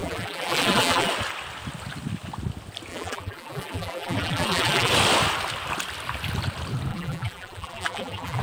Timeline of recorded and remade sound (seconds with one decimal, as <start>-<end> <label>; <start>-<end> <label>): 0.0-1.1 remade; 1.1-2.9 recorded; 2.9-4.9 remade; 4.9-6.9 recorded; 6.9-8.4 remade